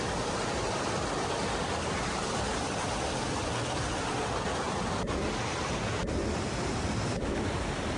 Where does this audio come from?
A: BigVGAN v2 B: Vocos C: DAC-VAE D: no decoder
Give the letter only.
D